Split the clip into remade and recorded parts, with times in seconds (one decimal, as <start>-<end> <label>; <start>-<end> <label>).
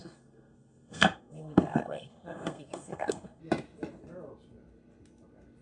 0.0-3.4 remade; 3.4-5.6 recorded